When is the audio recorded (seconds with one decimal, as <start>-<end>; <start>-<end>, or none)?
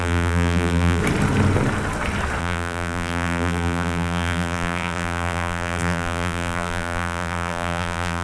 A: 1.0-2.4